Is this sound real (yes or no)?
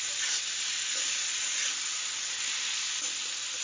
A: yes